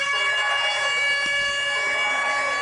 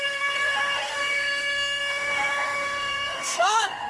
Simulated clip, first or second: second